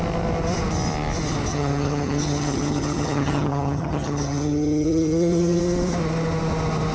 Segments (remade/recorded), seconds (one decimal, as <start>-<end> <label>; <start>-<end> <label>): 0.0-1.5 recorded; 1.5-5.6 remade; 5.6-6.9 recorded

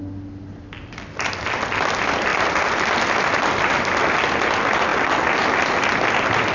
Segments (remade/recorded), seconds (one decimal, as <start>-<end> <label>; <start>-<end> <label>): 0.0-6.5 recorded

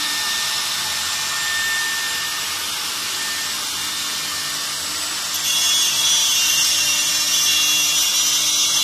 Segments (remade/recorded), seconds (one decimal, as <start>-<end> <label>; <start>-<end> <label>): 0.0-6.2 recorded; 6.2-7.1 remade; 7.1-8.8 recorded

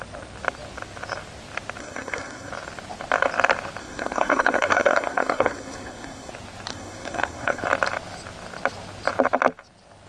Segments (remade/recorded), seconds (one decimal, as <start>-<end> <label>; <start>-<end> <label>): 0.0-1.8 recorded; 1.8-2.5 remade; 2.5-3.8 recorded; 3.8-6.3 remade; 6.3-6.7 recorded; 6.7-7.6 remade; 7.6-10.1 recorded

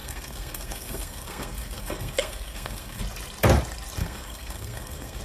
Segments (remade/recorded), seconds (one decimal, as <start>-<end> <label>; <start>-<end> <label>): 0.0-3.0 remade; 3.0-4.0 recorded; 4.0-5.2 remade

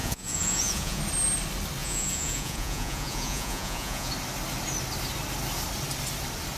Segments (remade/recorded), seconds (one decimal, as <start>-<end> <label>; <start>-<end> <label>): 0.0-1.0 remade; 1.0-1.8 recorded; 1.8-4.1 remade; 4.1-6.6 recorded